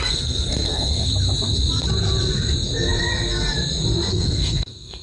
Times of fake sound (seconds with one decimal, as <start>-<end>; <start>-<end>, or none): 0.0-1.1; 4.1-5.0